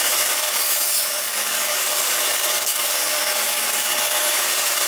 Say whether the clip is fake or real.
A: fake